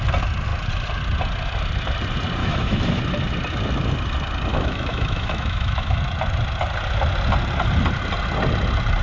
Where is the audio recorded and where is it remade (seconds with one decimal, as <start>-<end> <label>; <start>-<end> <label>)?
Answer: 0.0-2.4 recorded; 2.4-3.0 remade; 3.0-4.5 recorded; 4.5-6.0 remade; 6.0-9.0 recorded